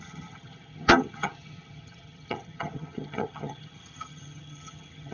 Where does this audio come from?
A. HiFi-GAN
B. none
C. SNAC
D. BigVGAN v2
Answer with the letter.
A